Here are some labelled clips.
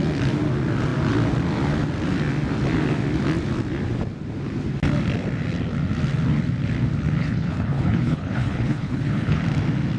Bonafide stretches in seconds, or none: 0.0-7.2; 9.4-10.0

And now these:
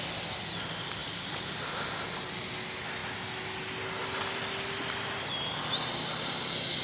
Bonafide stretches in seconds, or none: 0.0-6.8

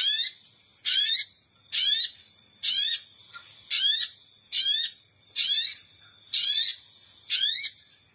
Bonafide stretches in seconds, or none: 0.0-8.1

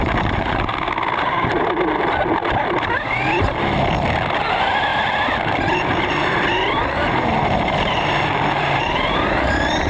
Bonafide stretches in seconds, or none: 0.7-4.5; 4.9-5.5